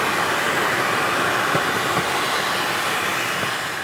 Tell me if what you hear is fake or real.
real